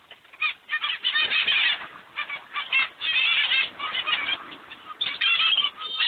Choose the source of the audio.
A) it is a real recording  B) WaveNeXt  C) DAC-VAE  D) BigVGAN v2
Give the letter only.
A